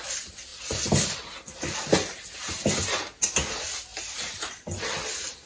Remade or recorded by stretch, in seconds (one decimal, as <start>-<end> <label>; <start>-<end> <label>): 0.0-3.9 recorded; 3.9-4.6 remade; 4.6-5.5 recorded